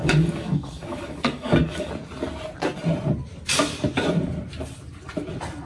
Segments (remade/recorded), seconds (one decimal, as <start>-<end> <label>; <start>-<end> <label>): 0.0-1.9 remade; 1.9-5.7 recorded